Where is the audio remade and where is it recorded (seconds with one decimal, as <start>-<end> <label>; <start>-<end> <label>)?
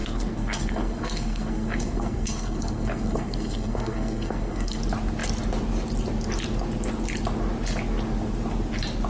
0.0-4.8 remade; 4.8-9.1 recorded